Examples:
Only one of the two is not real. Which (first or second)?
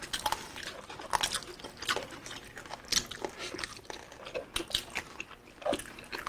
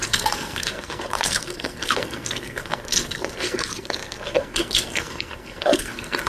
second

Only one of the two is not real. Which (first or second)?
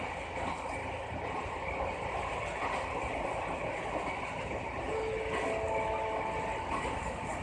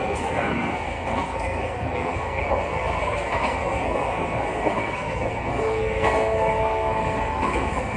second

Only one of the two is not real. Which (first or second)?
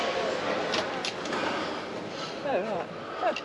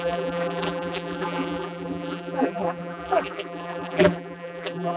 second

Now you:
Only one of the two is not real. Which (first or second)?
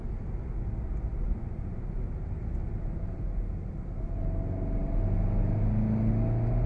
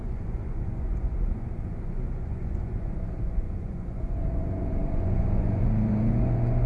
second